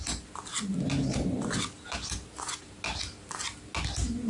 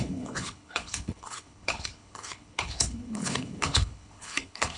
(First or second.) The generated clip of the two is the second